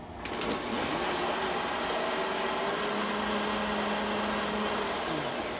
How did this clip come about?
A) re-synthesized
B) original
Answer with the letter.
B